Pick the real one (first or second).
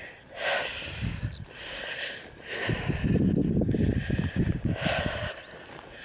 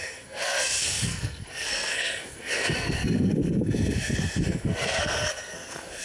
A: first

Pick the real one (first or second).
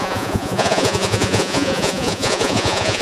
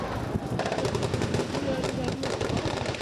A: second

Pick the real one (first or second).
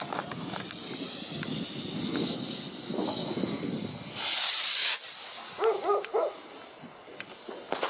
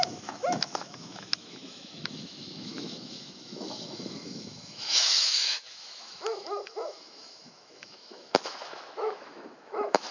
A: first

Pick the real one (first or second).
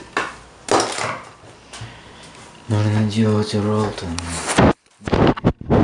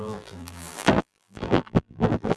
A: first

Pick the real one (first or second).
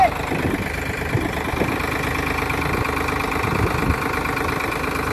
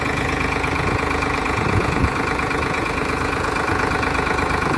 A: first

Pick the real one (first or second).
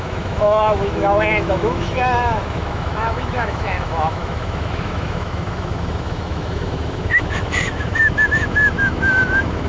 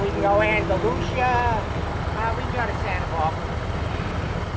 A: second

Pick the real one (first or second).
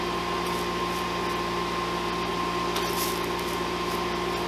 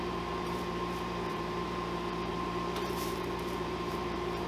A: first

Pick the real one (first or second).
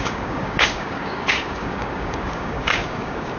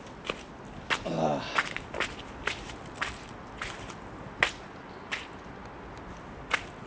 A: second